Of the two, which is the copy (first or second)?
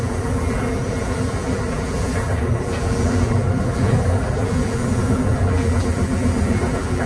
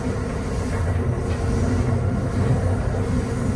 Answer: first